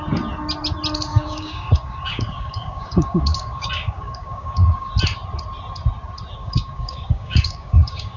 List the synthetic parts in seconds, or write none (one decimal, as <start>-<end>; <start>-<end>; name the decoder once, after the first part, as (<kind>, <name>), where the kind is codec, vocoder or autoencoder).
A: 1.1-4.9 (codec, DAC); 6.4-8.2